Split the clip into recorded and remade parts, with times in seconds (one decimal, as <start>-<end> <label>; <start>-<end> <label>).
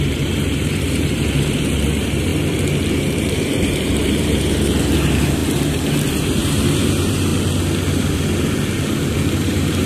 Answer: 0.0-2.3 remade; 2.3-3.0 recorded; 3.0-7.3 remade; 7.3-9.3 recorded; 9.3-9.9 remade